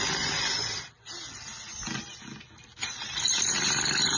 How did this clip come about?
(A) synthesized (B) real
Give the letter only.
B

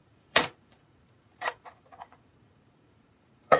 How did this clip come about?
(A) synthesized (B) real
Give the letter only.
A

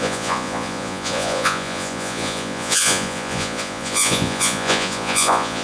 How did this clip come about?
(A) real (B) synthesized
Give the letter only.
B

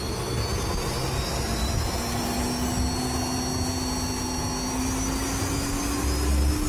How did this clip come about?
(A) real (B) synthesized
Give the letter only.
A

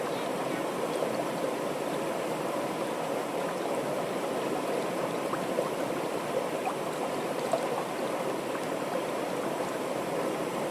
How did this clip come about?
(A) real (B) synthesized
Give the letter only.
A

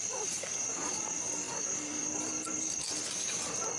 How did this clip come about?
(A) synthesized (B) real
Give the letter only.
B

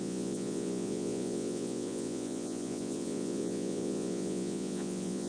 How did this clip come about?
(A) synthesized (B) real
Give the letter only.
A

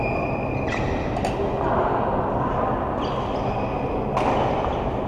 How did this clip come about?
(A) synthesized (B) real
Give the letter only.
B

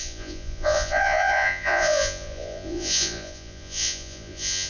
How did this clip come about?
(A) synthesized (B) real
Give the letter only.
A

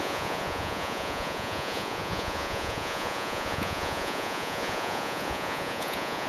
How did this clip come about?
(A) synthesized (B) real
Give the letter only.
A